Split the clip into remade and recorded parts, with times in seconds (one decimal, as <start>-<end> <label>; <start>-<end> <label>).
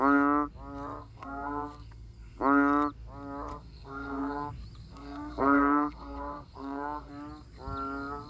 0.0-1.0 recorded; 1.0-2.4 remade; 2.4-3.5 recorded; 3.5-4.5 remade; 4.5-4.9 recorded; 4.9-7.1 remade; 7.1-8.3 recorded